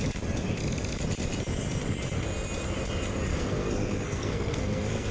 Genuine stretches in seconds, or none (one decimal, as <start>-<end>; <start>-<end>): 0.0-3.3